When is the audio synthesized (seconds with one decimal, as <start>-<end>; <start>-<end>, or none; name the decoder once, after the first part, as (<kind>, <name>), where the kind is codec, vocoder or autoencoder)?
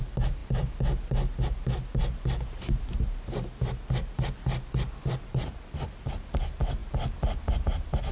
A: none